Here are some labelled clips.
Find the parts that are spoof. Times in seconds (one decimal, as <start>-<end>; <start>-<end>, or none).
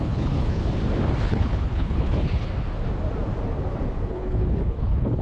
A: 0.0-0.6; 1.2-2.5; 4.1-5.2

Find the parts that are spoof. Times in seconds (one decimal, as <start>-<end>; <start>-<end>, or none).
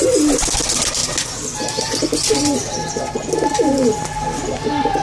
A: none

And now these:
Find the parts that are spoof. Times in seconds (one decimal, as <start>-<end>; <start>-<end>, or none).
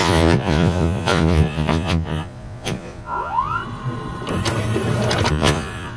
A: 0.0-3.6; 5.3-6.0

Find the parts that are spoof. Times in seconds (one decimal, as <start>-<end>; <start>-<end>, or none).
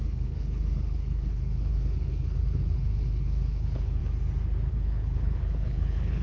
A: 0.0-4.0; 4.7-6.2